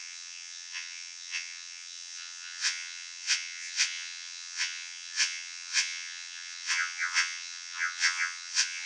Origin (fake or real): fake